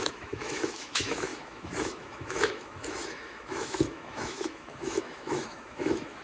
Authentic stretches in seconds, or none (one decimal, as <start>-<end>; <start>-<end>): none